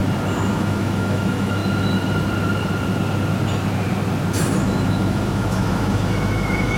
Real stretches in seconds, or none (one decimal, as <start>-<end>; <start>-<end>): 0.0-0.5; 1.6-4.6